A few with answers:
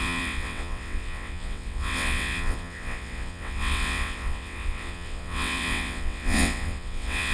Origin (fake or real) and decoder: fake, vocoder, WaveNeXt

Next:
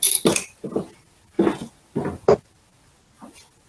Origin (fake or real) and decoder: real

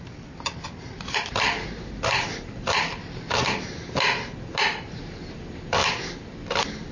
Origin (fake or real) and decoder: real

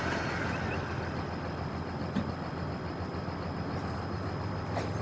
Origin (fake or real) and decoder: real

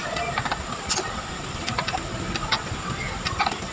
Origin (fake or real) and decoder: real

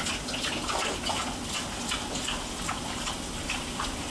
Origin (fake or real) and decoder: real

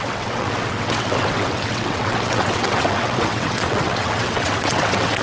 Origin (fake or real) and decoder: fake, vocoder, WaveNeXt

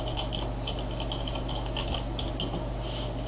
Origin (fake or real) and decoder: real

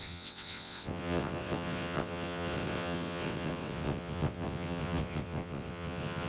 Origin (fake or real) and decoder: fake, vocoder, WaveNeXt